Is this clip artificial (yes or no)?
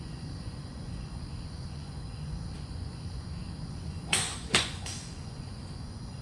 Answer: yes